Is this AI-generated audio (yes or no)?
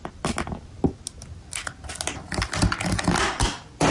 no